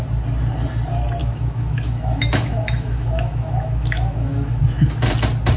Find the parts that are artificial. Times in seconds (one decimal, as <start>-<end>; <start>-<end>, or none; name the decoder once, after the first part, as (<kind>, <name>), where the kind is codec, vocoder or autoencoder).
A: 1.2-4.6 (autoencoder, DAC-VAE)